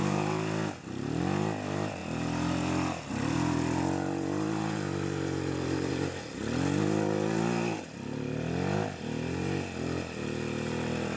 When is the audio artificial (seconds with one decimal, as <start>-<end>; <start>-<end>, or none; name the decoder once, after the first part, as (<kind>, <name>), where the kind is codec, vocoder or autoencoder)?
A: 2.0-5.9 (vocoder, BigVGAN v2)